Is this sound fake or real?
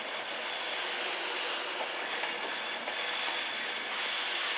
real